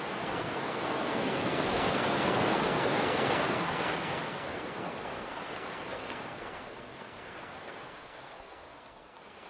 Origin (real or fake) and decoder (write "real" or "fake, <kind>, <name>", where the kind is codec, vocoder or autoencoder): fake, codec, SNAC